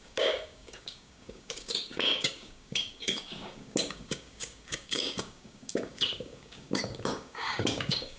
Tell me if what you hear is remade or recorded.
remade